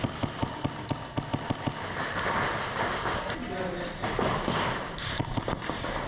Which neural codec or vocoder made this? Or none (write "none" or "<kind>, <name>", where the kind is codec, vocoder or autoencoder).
none